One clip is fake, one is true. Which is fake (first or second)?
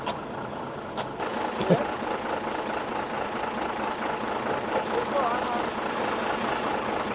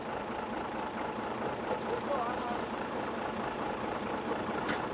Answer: second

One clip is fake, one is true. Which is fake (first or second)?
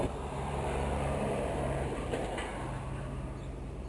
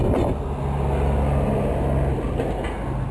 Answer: first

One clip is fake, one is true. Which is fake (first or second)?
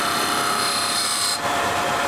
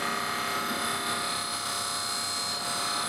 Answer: first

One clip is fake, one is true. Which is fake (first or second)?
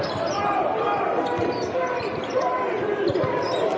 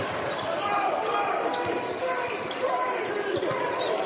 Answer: second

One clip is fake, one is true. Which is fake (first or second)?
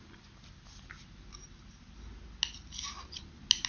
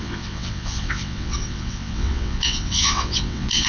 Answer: second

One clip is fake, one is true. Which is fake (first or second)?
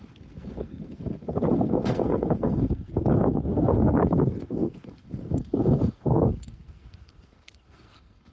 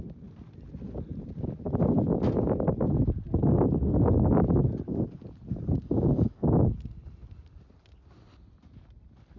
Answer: first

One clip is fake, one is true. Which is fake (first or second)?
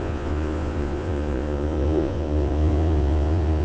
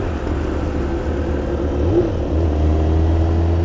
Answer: first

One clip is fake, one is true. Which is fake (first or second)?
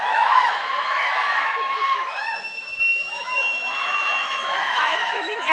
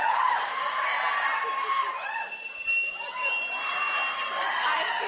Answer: first